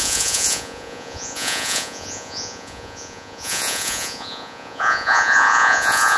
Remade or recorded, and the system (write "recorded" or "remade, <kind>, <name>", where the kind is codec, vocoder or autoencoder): remade, vocoder, Vocos